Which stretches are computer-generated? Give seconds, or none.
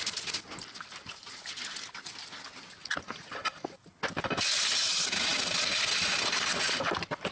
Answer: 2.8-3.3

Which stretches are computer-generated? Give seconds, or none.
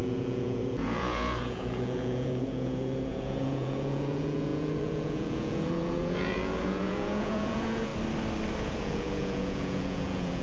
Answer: 0.0-7.9; 8.6-10.4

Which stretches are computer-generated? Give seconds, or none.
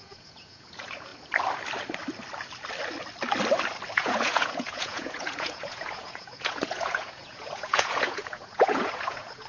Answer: 0.0-1.1; 3.9-9.5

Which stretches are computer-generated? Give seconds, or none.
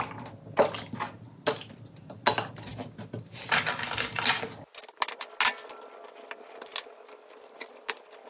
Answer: none